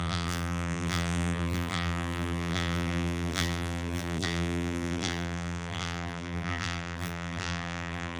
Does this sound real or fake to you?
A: fake